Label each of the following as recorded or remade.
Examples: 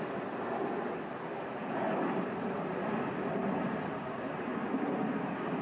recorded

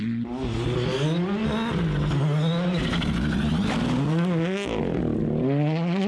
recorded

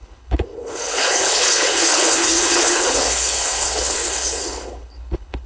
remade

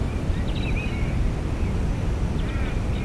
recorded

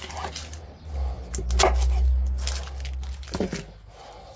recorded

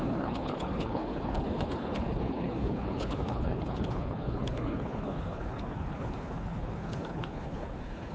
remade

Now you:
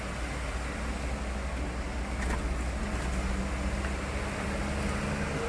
recorded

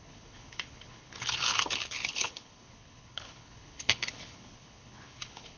remade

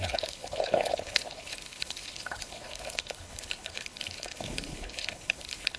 remade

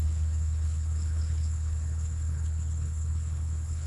remade